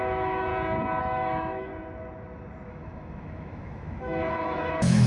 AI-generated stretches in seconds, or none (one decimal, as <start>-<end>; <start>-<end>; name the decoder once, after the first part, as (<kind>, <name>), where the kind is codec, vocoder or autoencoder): 0.0-0.5 (autoencoder, DAC-VAE); 1.0-1.7; 2.7-5.1